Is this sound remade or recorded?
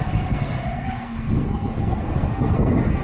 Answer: remade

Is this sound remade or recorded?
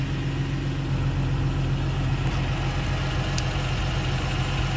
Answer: recorded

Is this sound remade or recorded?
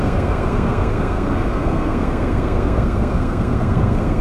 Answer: remade